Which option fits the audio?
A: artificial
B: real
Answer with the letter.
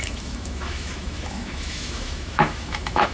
A